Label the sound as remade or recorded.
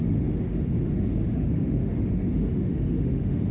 remade